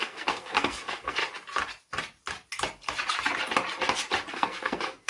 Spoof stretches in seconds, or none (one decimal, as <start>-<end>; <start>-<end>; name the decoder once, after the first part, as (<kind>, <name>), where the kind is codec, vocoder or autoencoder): 0.0-1.2 (codec, SNAC); 4.3-5.1